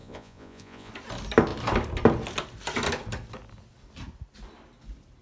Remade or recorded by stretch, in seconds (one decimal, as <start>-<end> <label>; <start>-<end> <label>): 0.0-0.9 remade; 0.9-5.2 recorded